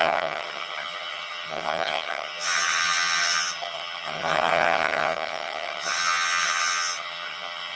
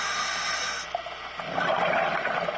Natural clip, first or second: second